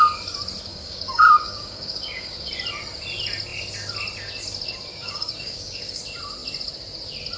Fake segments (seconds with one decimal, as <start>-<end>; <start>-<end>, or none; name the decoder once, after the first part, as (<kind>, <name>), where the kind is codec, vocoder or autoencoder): 0.7-2.5 (codec, DAC); 4.9-6.0